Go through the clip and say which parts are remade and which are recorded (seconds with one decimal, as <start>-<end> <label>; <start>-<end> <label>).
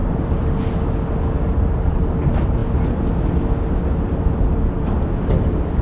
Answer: 0.0-0.6 remade; 0.6-5.8 recorded